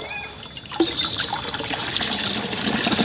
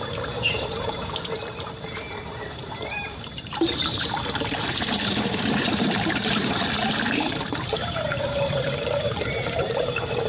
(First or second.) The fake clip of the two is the second